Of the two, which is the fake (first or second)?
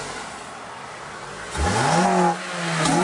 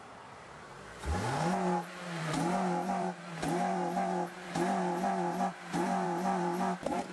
second